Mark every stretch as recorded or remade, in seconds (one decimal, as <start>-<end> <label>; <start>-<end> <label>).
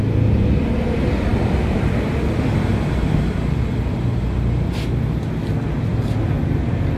0.0-1.3 recorded; 1.3-2.2 remade; 2.2-7.0 recorded